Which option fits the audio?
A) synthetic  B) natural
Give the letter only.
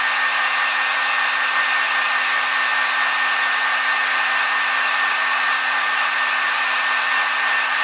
B